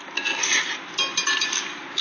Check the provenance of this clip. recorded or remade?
recorded